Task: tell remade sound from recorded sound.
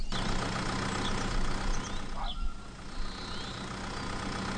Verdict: recorded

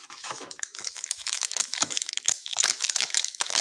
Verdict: remade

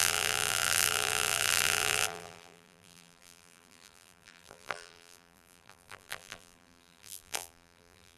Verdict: remade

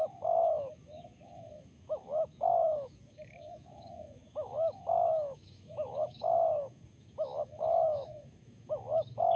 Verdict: remade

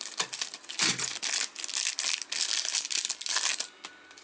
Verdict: recorded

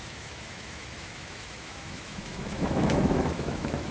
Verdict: remade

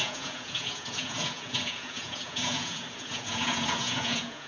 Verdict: remade